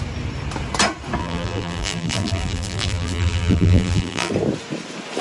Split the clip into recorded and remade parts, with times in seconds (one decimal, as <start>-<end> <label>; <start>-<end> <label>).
0.0-1.2 recorded; 1.2-4.3 remade; 4.3-5.2 recorded